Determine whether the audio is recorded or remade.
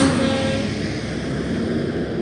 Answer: recorded